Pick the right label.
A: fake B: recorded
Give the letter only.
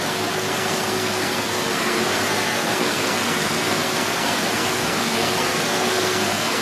A